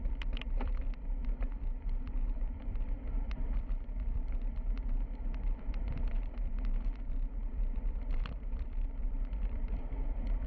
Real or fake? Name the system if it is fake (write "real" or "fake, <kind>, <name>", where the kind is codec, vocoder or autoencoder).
fake, vocoder, BigVGAN v2